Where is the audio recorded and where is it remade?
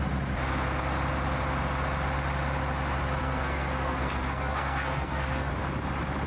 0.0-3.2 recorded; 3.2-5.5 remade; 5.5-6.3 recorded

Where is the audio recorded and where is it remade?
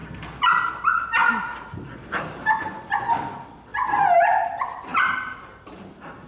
0.0-6.3 recorded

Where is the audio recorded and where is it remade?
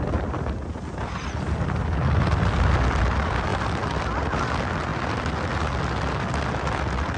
0.0-7.2 recorded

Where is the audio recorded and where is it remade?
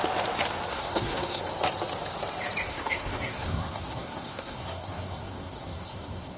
0.0-0.7 recorded; 0.7-1.4 remade; 1.4-2.7 recorded; 2.7-6.4 remade